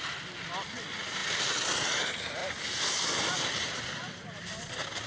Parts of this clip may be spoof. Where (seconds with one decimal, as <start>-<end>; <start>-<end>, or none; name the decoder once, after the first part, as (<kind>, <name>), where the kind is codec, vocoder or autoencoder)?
none

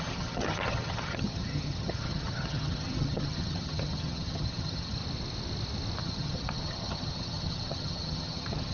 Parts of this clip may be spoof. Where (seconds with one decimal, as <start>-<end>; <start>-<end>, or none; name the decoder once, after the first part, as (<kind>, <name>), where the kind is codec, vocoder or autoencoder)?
0.0-5.0 (vocoder, HiFi-GAN); 6.0-8.7

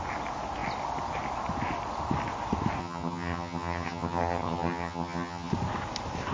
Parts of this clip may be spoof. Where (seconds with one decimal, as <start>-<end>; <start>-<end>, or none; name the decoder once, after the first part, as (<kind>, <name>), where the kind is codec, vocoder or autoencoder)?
2.8-5.5 (vocoder, HiFi-GAN)

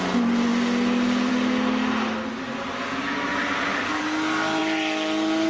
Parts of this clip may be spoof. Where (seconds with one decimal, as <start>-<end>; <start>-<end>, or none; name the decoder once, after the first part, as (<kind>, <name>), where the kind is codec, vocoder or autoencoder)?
none

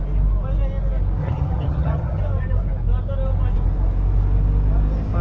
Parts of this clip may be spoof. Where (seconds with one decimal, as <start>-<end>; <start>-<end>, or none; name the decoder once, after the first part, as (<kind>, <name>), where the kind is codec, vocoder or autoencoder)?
1.2-2.2 (vocoder, HiFi-GAN)

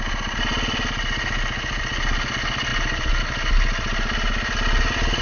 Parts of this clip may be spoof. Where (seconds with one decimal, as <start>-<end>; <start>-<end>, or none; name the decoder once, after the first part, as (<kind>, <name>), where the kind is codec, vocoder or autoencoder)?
none

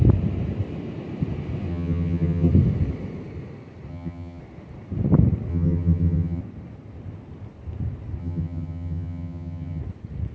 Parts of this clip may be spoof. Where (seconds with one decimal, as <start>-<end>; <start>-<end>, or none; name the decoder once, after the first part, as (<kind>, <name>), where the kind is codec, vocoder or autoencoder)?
1.7-2.5 (vocoder, HiFi-GAN); 3.9-4.4; 5.5-6.4; 8.2-9.8